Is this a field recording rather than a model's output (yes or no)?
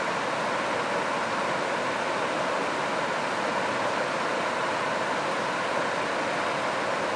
yes